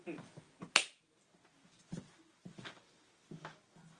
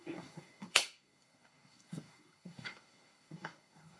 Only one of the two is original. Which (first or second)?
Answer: first